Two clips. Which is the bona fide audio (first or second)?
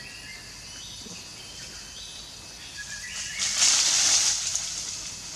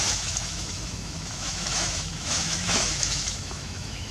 first